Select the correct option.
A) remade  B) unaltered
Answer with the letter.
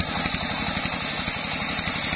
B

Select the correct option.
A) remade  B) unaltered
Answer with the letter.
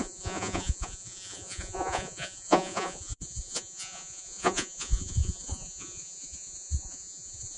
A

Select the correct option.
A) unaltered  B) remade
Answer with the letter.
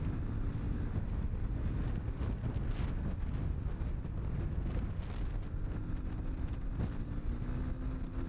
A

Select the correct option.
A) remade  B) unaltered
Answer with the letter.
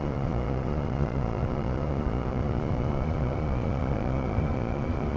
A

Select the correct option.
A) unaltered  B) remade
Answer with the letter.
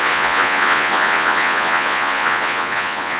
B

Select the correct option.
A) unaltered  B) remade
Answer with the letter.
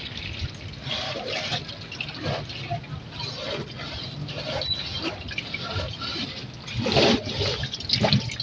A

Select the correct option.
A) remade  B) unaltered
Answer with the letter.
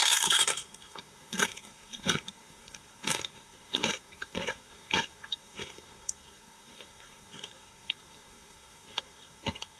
A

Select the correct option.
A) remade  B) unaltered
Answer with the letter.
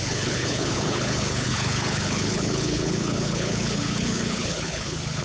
A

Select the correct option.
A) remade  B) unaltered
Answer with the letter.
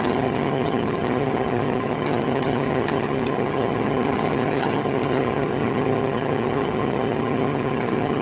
A